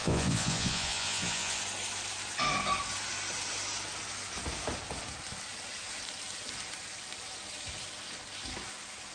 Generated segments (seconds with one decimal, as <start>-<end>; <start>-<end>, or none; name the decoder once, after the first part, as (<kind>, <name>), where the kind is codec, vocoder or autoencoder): 0.0-1.6 (vocoder, Vocos)